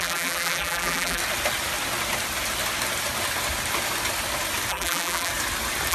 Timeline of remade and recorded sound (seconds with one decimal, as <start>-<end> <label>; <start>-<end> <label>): 0.0-1.2 remade; 1.2-4.7 recorded; 4.7-5.3 remade; 5.3-5.9 recorded

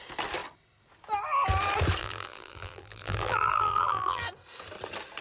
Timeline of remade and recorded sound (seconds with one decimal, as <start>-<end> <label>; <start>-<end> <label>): 0.0-2.0 recorded; 2.0-4.2 remade; 4.2-5.2 recorded

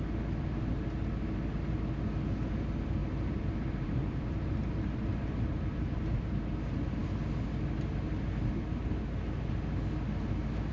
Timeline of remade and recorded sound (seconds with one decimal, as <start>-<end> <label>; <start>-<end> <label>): 0.0-3.0 recorded; 3.0-6.4 remade; 6.4-10.7 recorded

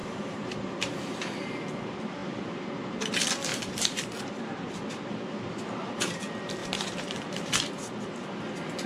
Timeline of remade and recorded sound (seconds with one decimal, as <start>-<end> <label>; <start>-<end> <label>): 0.0-1.5 remade; 1.5-3.5 recorded; 3.5-4.9 remade; 4.9-6.6 recorded; 6.6-8.2 remade; 8.2-8.9 recorded

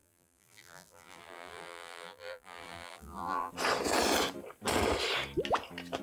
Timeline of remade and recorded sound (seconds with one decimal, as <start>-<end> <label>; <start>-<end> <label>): 0.0-3.5 remade; 3.5-6.0 recorded